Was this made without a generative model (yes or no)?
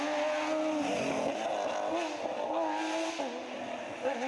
yes